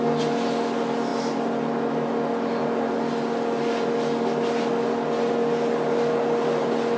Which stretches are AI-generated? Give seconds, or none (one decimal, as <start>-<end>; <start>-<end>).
none